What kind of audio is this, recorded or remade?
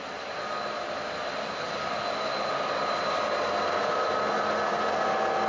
recorded